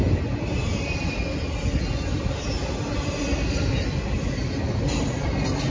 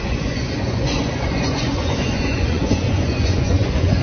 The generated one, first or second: second